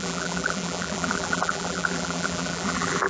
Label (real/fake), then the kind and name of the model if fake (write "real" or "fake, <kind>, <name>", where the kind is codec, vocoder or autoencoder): fake, vocoder, BigVGAN v2